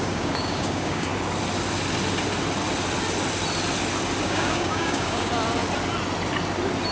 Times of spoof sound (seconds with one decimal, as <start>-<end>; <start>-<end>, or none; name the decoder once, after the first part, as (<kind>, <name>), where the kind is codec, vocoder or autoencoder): 0.0-1.1 (codec, DAC); 4.2-5.3